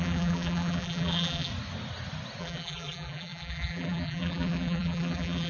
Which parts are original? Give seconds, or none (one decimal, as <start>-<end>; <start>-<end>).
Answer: 1.5-2.4